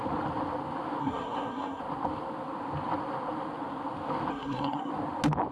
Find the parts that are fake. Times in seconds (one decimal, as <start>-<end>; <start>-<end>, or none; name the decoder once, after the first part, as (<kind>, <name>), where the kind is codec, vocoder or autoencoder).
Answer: 1.0-1.8 (codec, SNAC); 4.3-4.9